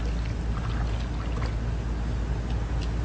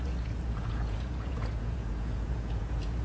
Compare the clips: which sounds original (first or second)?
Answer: first